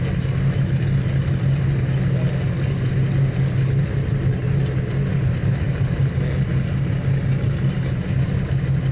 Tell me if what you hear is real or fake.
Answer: real